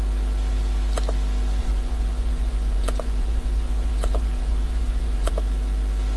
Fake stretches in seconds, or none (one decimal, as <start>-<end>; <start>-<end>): 1.6-5.3